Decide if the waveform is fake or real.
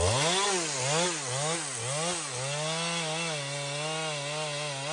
real